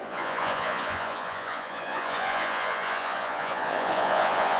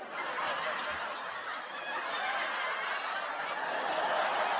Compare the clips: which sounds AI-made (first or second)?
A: first